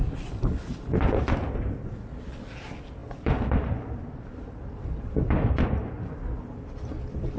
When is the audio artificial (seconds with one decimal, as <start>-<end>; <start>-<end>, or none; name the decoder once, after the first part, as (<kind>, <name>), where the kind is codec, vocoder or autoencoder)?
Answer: none